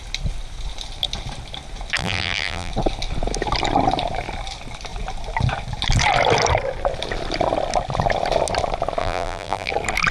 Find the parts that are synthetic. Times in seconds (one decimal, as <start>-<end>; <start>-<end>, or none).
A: 2.0-2.7; 9.0-9.7